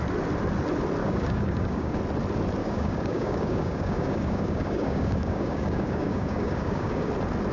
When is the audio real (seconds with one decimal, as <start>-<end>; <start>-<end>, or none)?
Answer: 0.0-1.0; 2.0-2.6; 7.1-7.5